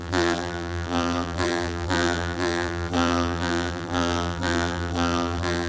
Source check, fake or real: fake